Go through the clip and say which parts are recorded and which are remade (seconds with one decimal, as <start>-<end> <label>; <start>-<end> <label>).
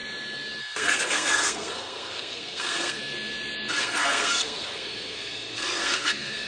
0.0-0.6 recorded; 0.6-3.0 remade; 3.0-3.8 recorded; 3.8-6.5 remade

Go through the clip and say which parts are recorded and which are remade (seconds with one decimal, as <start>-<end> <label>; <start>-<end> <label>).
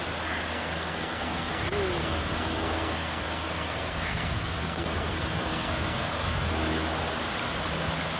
0.0-0.5 recorded; 0.5-1.6 remade; 1.6-2.0 recorded; 2.0-6.5 remade; 6.5-8.2 recorded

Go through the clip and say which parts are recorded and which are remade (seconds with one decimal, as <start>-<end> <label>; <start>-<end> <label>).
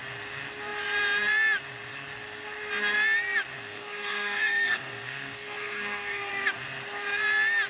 0.0-3.7 recorded; 3.7-6.3 remade; 6.3-7.7 recorded